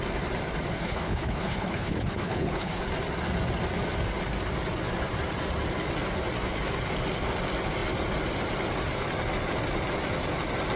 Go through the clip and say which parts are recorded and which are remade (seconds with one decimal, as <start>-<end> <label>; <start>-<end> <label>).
0.0-0.7 recorded; 0.7-2.8 remade; 2.8-10.8 recorded